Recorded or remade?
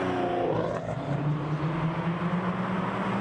recorded